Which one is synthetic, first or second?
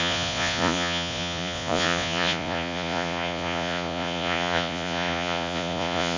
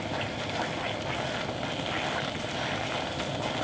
first